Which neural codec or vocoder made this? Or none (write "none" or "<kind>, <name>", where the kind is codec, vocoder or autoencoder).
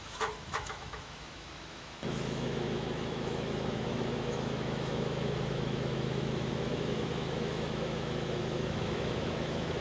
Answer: autoencoder, DAC-VAE